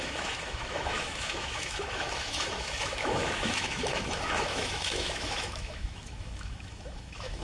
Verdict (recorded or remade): remade